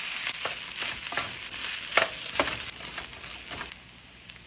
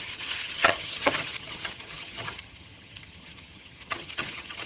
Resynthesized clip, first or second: second